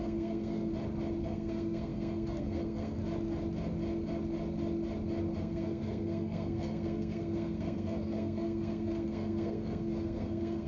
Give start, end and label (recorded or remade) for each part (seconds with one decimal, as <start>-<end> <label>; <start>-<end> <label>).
0.0-0.7 remade; 0.7-1.2 recorded; 1.2-3.0 remade; 3.0-5.4 recorded; 5.4-10.7 remade